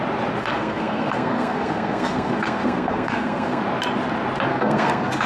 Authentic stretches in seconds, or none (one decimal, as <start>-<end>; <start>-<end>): 0.0-0.4; 3.6-4.5